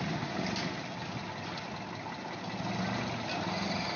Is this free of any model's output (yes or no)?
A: yes